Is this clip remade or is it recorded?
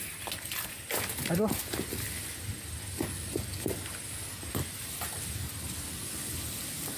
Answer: recorded